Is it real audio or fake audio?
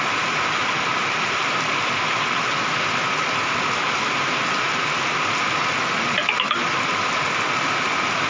real